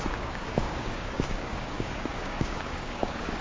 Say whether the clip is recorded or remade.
remade